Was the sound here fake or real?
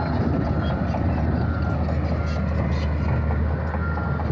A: real